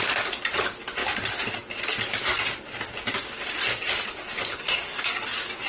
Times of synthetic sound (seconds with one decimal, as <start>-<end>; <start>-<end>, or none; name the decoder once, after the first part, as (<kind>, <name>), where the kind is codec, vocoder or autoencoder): 4.5-5.0 (codec, SNAC)